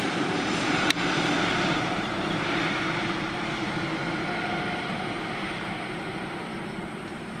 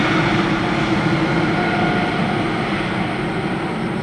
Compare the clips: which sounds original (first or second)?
second